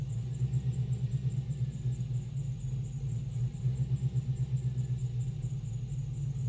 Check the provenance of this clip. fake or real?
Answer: real